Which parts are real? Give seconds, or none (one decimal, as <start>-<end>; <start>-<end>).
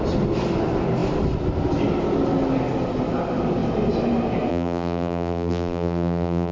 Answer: 0.0-4.5